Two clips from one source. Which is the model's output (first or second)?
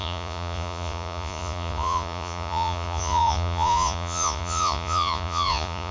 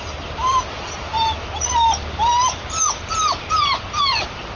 first